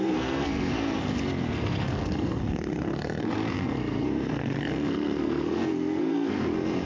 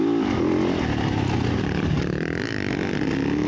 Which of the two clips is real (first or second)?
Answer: second